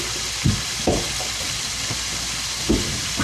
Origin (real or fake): real